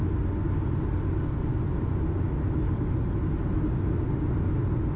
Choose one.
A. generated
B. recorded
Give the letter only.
B